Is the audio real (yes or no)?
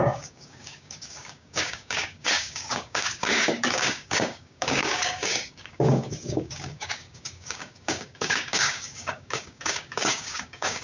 no